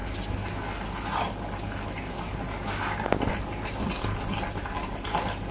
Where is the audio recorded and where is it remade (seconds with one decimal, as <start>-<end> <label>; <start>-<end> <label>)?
0.0-5.5 recorded